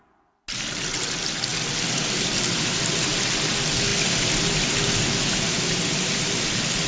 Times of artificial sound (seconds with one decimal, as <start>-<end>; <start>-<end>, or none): none